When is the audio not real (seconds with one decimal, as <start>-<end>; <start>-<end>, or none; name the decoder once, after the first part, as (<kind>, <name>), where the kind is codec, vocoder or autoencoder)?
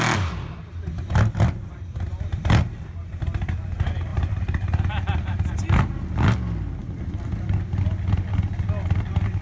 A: none